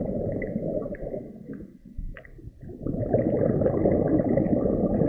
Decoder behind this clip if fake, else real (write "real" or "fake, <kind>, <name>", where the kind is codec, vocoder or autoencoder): real